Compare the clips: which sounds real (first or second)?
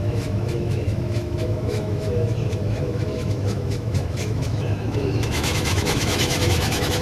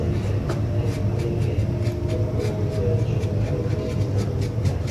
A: second